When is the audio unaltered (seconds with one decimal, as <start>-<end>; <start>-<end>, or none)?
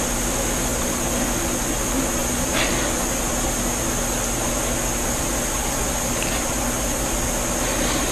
0.0-8.1